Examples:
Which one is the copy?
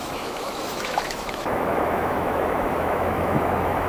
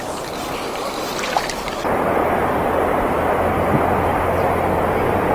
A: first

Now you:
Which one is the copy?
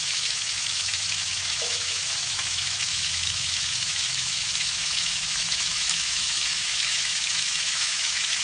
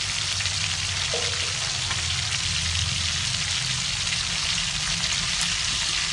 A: first